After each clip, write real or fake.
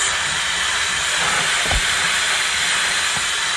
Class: fake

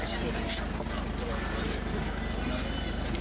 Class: real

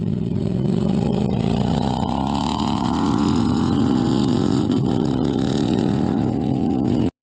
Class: fake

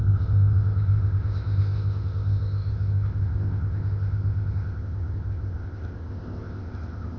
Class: fake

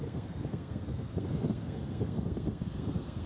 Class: fake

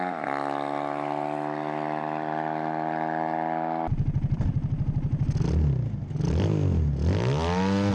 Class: real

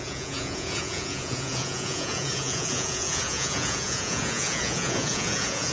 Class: fake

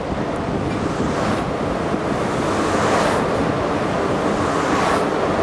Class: real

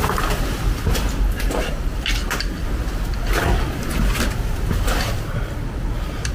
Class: real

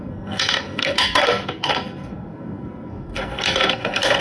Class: fake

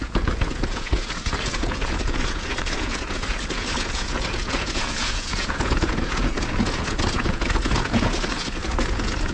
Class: fake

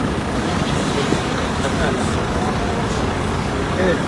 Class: fake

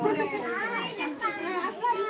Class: fake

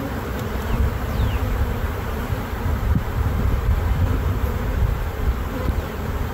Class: fake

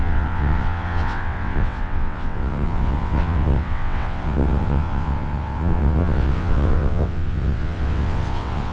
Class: fake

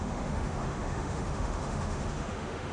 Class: fake